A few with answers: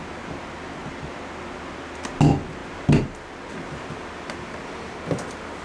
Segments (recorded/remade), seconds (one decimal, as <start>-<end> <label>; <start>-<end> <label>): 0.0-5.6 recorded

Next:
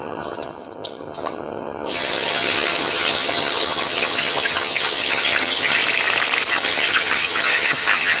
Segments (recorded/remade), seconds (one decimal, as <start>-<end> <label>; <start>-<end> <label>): 0.0-5.8 remade; 5.8-6.5 recorded; 6.5-8.2 remade

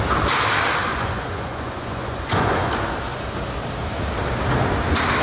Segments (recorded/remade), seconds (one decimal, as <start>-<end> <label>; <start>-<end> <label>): 0.0-0.9 recorded; 0.9-2.7 remade; 2.7-5.2 recorded

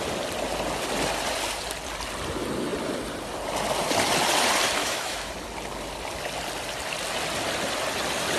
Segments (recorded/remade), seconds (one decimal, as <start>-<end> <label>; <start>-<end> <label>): 0.0-4.8 recorded; 4.8-5.3 remade; 5.3-8.4 recorded

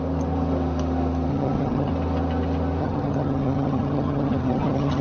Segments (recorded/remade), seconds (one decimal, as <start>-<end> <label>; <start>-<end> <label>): 0.0-1.3 recorded; 1.3-1.9 remade; 1.9-2.8 recorded; 2.8-5.0 remade

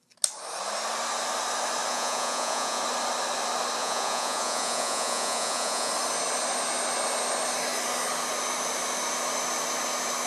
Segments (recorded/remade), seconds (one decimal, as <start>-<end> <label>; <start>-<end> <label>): 0.0-1.9 recorded; 1.9-2.8 remade; 2.8-3.8 recorded; 3.8-5.9 remade; 5.9-10.3 recorded

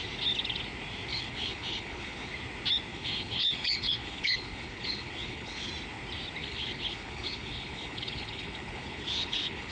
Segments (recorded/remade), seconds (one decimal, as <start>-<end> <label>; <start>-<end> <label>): 0.0-1.1 recorded; 1.1-2.3 remade; 2.3-2.9 recorded; 2.9-5.7 remade; 5.7-6.4 recorded; 6.4-9.7 remade

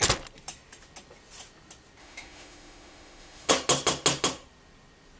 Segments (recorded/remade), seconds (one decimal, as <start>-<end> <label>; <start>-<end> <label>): 0.0-2.0 recorded; 2.0-3.5 remade; 3.5-5.2 recorded